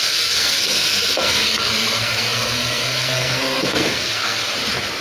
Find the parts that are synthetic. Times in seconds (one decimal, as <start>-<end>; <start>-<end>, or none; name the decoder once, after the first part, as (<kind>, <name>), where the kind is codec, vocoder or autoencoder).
0.0-4.4 (codec, SNAC)